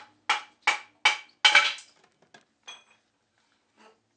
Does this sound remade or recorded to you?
recorded